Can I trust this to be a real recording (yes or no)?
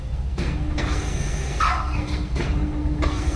no